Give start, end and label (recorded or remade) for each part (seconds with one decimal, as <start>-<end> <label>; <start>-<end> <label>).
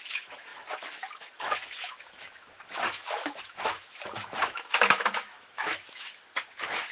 0.0-6.9 remade